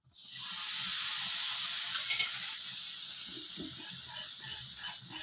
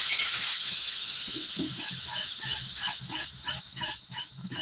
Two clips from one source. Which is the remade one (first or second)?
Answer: second